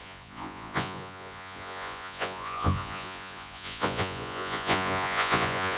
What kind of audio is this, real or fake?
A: fake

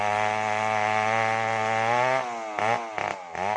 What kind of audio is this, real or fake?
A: real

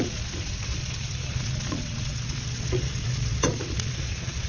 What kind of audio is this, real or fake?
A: fake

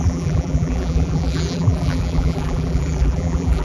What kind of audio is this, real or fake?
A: fake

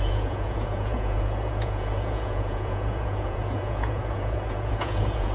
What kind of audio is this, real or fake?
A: fake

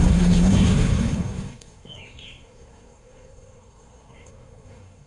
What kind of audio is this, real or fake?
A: fake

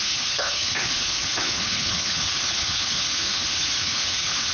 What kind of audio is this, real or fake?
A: fake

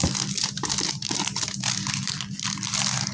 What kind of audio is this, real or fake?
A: real